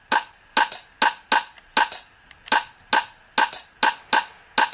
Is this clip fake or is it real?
real